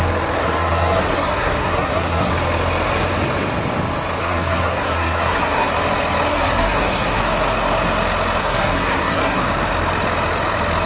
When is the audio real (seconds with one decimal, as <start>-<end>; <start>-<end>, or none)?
0.0-0.4; 2.3-4.2; 5.7-6.3; 7.2-8.4; 9.4-10.9